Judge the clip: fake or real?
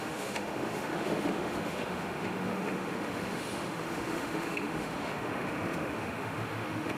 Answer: fake